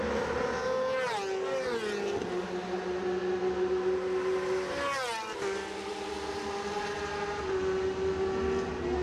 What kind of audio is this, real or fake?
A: real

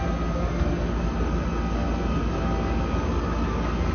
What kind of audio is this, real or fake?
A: real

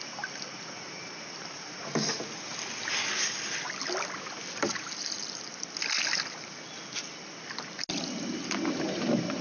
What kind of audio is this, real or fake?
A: real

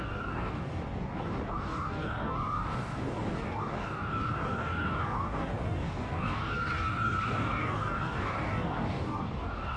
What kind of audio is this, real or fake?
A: fake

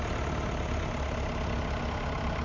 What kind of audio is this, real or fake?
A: real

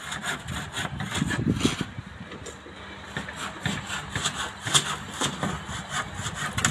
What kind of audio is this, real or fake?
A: real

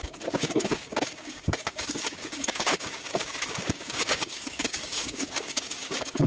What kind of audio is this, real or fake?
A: fake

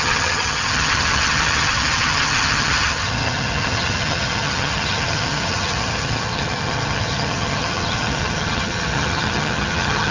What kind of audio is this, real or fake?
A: fake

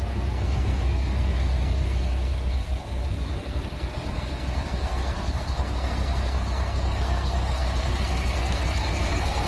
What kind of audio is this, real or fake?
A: fake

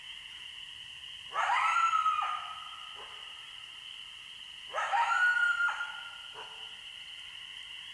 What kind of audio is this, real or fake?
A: real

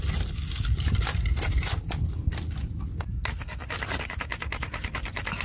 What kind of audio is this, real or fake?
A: real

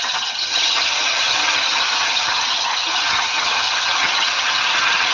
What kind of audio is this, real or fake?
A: fake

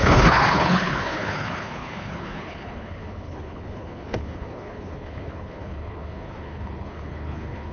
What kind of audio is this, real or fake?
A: fake